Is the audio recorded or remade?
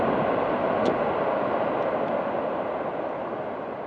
recorded